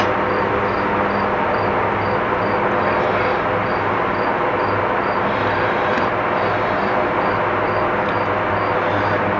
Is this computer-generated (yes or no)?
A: no